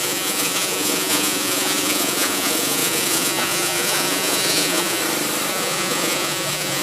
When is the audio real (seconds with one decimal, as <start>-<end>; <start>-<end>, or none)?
5.0-5.5

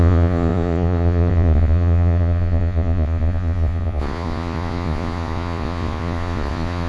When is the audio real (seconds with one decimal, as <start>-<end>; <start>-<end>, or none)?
none

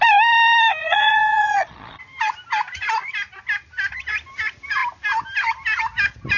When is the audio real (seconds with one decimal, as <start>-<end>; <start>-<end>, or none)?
0.0-0.8; 2.0-6.4

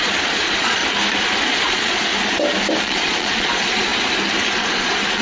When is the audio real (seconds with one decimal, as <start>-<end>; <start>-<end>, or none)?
0.8-1.5; 2.1-2.8; 3.9-4.5

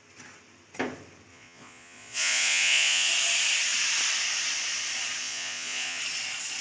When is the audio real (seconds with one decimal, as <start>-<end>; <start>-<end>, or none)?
0.0-1.3; 3.1-5.2; 6.0-6.6